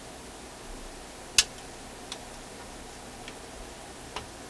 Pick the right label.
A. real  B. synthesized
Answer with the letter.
A